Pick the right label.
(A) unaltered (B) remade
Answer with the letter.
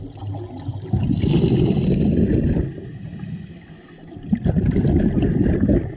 A